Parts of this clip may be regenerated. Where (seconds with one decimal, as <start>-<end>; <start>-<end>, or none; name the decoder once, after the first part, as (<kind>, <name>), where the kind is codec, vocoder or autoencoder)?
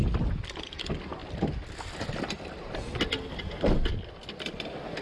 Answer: none